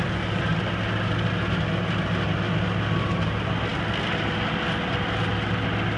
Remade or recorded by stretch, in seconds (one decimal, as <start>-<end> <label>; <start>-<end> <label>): 0.0-6.0 recorded